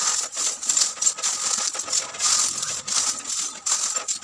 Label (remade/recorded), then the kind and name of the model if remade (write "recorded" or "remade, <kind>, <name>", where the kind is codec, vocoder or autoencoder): recorded